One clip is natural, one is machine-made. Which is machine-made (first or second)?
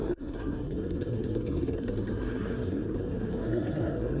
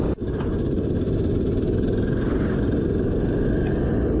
first